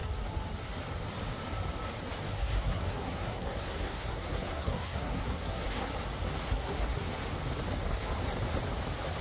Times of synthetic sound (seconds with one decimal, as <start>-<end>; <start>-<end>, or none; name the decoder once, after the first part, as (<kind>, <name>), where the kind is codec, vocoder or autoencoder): 2.4-5.9 (codec, SNAC); 6.5-7.1